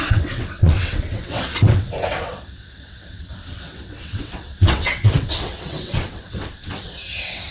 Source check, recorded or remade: remade